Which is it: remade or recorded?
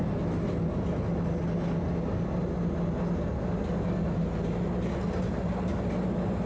recorded